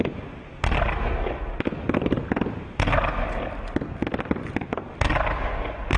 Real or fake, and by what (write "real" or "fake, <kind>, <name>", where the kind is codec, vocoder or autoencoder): real